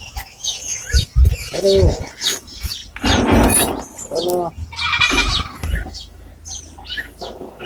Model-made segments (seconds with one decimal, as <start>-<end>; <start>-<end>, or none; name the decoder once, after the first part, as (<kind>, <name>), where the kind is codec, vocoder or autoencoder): 0.0-2.8 (autoencoder, DAC-VAE); 5.1-6.3; 6.9-7.7

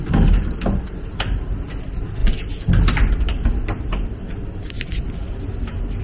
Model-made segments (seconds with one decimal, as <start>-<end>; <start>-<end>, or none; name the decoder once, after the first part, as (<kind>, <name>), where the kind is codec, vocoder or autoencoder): none

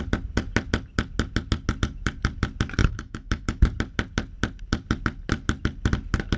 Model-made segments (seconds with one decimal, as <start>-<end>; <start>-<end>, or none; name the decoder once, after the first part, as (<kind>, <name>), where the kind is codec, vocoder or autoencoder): 2.8-3.6 (autoencoder, DAC-VAE)